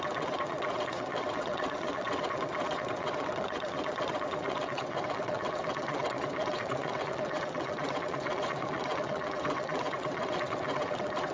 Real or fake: fake